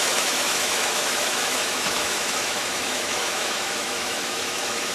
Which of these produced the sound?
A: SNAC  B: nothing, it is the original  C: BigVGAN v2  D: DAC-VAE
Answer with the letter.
D